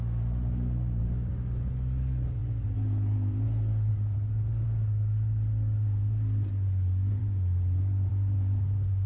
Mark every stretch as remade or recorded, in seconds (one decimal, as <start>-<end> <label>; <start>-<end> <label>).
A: 0.0-1.0 recorded; 1.0-1.7 remade; 1.7-7.2 recorded; 7.2-8.1 remade; 8.1-9.1 recorded